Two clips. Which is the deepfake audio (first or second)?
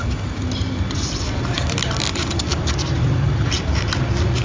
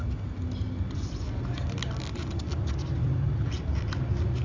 first